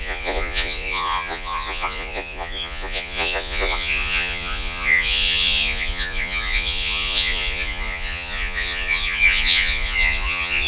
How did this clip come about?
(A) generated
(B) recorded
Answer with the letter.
A